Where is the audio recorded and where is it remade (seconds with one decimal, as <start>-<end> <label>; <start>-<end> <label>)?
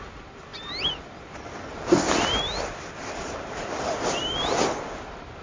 0.0-5.4 recorded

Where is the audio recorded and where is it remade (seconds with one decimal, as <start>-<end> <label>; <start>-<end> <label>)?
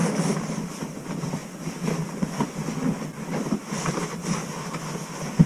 0.0-0.6 recorded; 0.6-4.4 remade; 4.4-5.5 recorded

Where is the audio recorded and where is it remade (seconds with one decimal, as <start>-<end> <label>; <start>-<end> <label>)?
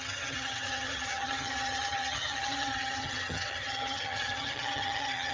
0.0-5.3 remade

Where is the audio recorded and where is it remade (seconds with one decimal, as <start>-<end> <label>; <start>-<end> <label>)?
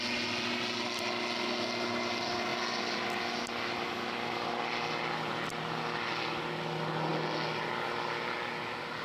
0.0-9.0 recorded